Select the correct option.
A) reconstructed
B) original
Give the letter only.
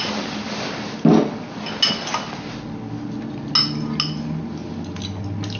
B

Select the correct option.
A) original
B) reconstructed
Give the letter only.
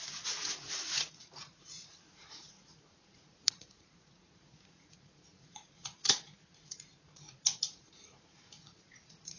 B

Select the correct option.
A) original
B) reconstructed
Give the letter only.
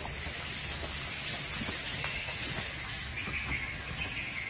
A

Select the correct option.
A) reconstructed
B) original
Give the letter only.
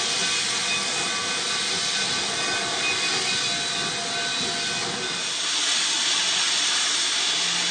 B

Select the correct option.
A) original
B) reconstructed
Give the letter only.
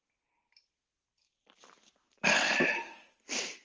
B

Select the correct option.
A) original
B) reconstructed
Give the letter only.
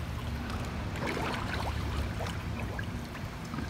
B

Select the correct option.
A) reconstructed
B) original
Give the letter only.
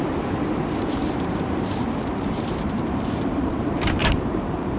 A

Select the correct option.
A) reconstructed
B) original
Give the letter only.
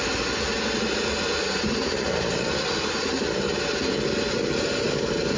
B